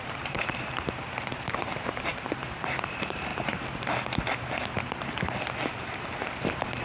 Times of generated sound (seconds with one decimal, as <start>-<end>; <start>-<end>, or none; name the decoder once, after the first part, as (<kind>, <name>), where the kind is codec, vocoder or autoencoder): 0.0-3.3 (vocoder, BigVGAN v2); 5.8-6.8